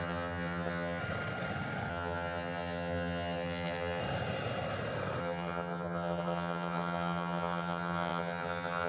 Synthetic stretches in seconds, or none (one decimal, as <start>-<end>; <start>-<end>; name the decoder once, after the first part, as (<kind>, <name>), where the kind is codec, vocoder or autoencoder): 0.0-1.0 (vocoder, HiFi-GAN); 1.9-4.0; 5.2-8.9